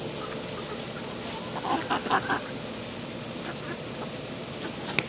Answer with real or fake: real